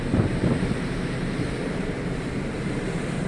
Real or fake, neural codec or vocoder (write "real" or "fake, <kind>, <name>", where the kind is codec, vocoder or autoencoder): fake, vocoder, BigVGAN v2